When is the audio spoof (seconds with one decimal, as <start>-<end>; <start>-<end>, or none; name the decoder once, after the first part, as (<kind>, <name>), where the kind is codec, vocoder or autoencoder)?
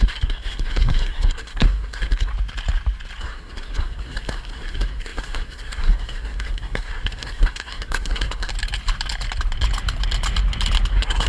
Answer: 0.0-2.3 (codec, SNAC); 3.2-8.5; 10.9-11.3